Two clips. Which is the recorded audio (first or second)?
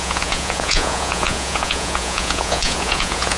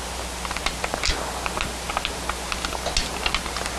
second